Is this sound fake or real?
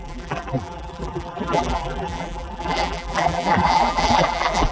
fake